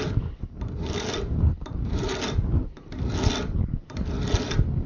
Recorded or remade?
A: recorded